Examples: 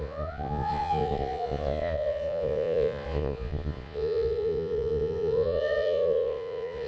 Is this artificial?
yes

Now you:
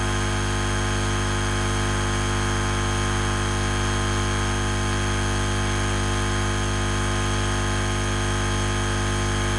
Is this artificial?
no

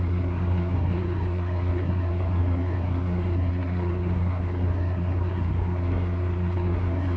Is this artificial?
yes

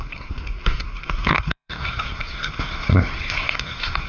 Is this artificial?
yes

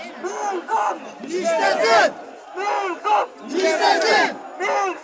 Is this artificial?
no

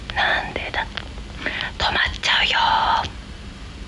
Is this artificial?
no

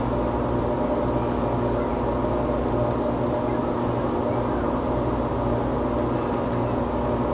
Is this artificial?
no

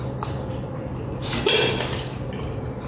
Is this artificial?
no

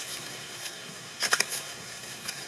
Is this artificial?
yes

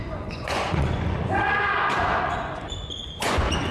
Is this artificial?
yes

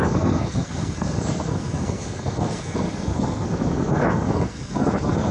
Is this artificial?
yes